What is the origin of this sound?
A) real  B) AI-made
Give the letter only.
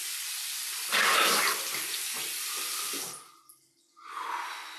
A